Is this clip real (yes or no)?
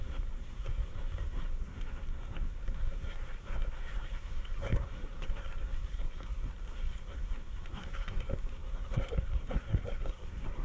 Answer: no